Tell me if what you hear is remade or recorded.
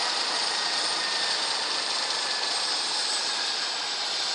recorded